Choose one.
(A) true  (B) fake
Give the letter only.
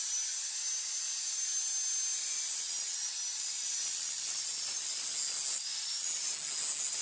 A